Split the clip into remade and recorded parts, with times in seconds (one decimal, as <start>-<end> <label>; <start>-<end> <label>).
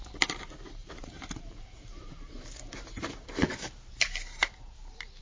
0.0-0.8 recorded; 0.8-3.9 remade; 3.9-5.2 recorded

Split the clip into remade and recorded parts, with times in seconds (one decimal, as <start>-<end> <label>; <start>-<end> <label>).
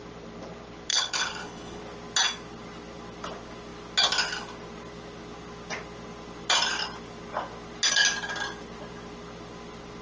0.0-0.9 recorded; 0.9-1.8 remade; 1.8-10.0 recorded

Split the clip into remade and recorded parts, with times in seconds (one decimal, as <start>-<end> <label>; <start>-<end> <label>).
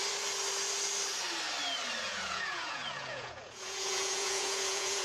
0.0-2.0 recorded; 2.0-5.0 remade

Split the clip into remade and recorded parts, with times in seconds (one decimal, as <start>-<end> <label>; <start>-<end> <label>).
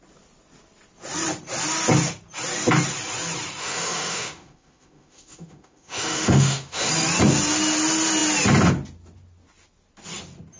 0.0-3.6 recorded; 3.6-6.9 remade; 6.9-10.6 recorded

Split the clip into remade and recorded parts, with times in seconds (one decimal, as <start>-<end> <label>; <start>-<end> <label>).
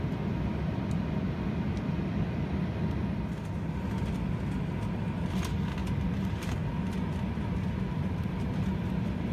0.0-9.3 recorded